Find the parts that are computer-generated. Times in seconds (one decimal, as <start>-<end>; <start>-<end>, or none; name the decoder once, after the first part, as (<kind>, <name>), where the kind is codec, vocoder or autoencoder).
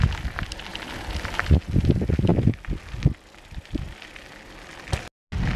none